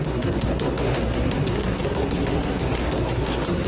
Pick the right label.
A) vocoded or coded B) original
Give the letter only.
A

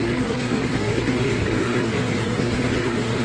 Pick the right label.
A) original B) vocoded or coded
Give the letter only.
B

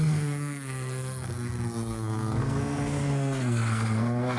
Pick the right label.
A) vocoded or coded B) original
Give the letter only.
A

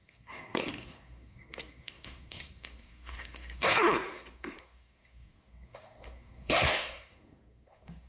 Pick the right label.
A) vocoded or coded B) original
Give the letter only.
A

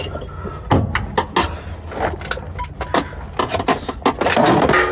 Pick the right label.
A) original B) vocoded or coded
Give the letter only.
A